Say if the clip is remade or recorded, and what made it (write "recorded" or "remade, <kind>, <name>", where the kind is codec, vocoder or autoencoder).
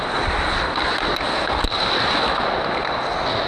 recorded